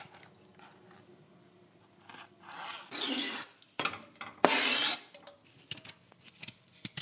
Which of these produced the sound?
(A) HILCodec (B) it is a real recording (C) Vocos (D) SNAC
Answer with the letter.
B